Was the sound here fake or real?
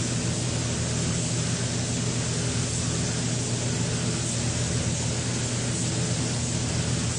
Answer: real